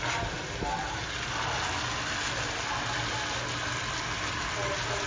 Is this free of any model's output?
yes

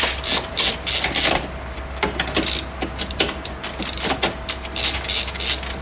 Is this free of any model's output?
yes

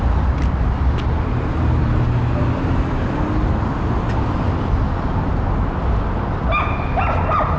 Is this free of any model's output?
yes